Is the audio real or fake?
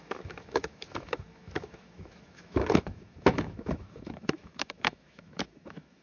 fake